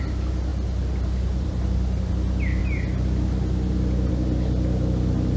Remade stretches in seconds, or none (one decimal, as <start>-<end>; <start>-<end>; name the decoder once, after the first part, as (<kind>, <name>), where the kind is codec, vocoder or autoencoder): 0.5-2.1 (vocoder, BigVGAN v2)